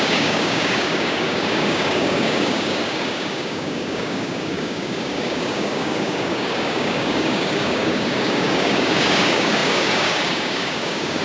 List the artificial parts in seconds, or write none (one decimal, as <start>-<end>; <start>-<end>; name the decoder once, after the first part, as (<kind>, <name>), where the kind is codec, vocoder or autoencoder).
0.0-11.2 (codec, DAC)